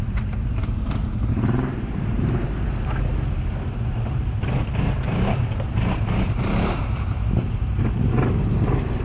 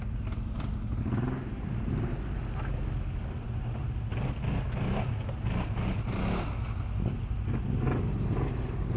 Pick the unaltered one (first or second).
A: second